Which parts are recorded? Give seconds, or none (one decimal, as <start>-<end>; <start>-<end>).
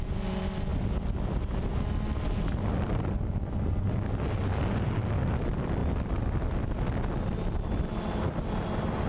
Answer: 0.0-9.1